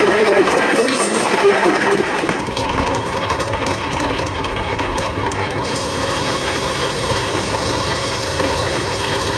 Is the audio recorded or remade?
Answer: remade